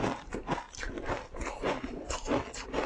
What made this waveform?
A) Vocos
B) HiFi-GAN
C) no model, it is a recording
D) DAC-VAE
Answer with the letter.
C